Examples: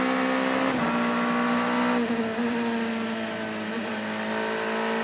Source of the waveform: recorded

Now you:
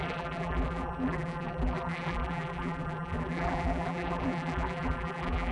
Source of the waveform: remade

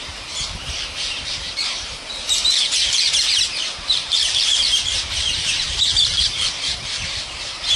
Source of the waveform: remade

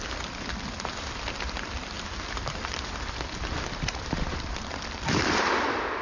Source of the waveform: remade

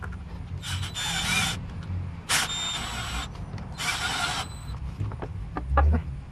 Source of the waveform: recorded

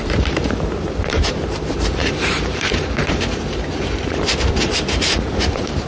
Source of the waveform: remade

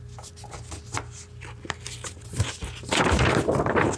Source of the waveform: recorded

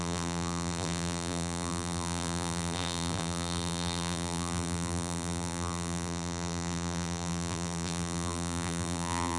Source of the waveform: remade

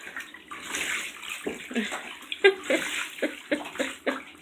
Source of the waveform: recorded